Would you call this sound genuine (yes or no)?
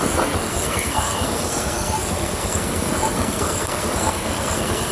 no